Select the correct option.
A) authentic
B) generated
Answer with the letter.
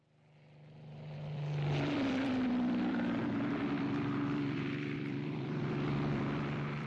B